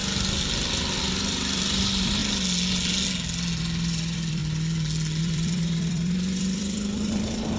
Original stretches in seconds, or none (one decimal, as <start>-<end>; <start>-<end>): 0.0-1.0; 2.2-3.6; 4.4-5.2